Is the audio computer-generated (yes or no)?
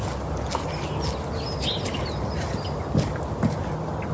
no